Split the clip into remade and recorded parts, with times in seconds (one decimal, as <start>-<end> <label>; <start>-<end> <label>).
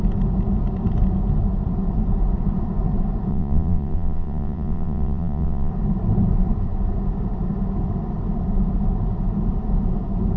0.0-3.3 recorded; 3.3-5.7 remade; 5.7-10.4 recorded